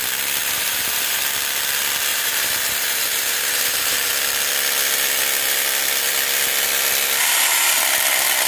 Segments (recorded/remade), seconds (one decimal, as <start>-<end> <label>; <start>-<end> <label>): 0.0-0.4 recorded; 0.4-1.2 remade; 1.2-2.1 recorded; 2.1-4.1 remade; 4.1-8.5 recorded